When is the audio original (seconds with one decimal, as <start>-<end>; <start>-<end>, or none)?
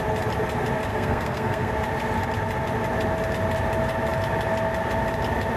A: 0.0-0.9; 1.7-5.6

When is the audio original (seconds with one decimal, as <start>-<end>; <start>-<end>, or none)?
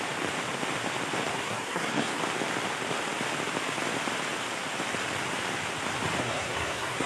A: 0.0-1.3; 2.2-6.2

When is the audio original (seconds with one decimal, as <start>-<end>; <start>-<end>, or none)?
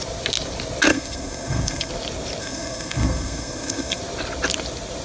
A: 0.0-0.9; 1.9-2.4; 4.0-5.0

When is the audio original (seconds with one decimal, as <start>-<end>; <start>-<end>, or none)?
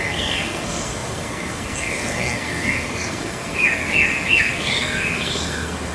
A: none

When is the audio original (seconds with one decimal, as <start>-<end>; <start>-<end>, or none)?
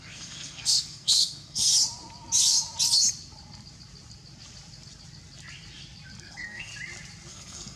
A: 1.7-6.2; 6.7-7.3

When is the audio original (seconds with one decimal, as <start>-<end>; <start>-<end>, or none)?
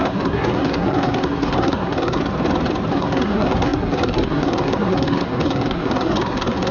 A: 2.2-2.9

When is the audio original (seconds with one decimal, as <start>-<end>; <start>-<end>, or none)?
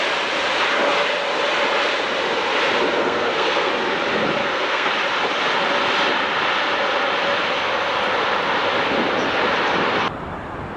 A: 0.0-3.0; 3.7-4.4; 4.9-10.8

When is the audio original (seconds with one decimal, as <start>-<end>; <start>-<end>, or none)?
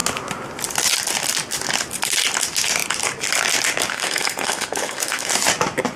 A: 0.0-3.9; 5.3-6.0